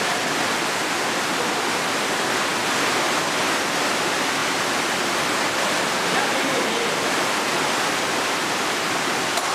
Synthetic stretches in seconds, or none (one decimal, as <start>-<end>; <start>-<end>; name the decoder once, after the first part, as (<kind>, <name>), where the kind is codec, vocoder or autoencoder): none